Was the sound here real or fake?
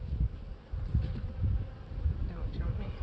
real